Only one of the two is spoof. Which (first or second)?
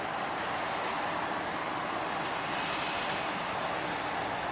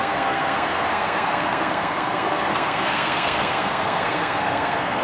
second